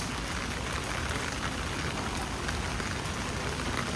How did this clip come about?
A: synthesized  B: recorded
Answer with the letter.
B